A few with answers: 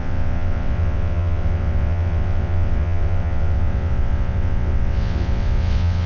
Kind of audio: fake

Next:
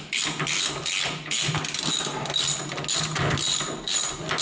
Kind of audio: real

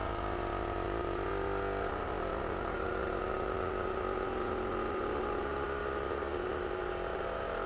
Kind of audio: real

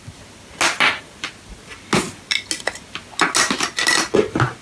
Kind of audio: real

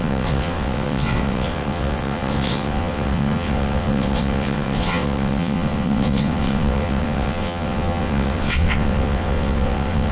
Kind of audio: fake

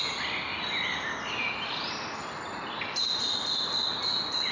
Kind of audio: real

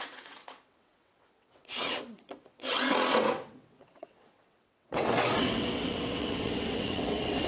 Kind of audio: fake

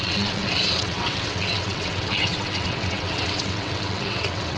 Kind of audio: fake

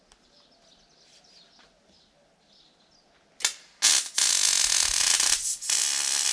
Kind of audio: real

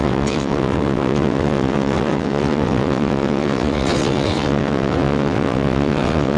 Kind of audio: fake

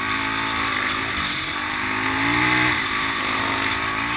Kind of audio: real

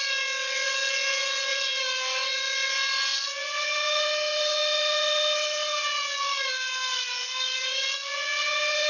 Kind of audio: fake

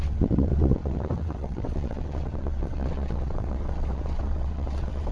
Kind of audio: fake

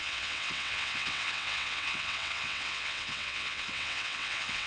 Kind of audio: fake